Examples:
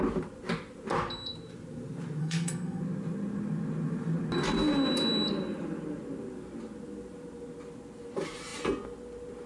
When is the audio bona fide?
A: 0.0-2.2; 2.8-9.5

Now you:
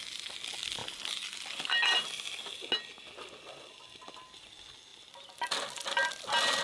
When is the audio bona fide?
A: 0.0-6.6

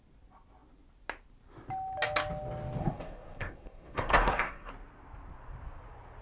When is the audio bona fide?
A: 0.0-2.8; 4.7-6.2

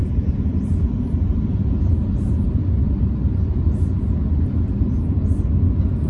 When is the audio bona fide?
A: 3.7-6.1

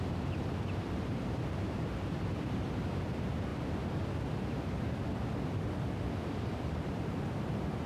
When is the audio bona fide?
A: 3.5-6.2